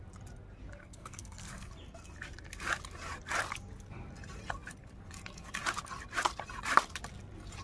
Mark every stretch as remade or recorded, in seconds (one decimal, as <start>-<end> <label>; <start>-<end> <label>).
0.0-0.8 recorded; 0.8-1.7 remade; 1.7-7.6 recorded